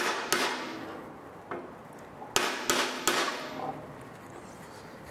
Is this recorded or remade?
recorded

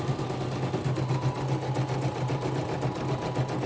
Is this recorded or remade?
recorded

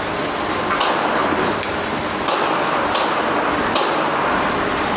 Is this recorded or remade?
recorded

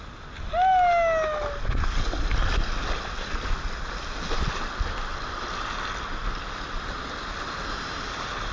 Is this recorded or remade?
recorded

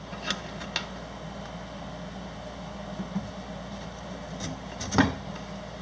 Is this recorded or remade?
recorded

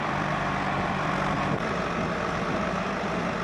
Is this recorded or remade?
recorded